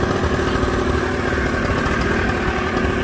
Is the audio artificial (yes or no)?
no